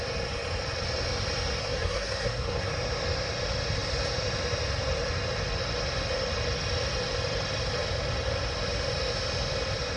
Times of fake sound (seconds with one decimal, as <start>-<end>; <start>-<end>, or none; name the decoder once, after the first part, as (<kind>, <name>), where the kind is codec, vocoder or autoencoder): 1.6-2.7 (codec, SNAC)